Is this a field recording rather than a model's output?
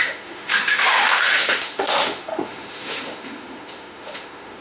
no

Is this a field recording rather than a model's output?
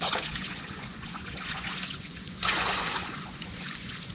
no